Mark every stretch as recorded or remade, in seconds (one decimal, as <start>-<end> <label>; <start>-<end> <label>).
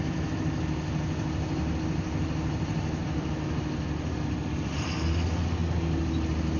0.0-6.6 recorded